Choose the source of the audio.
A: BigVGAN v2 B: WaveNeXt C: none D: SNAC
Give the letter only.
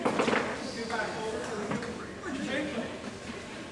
C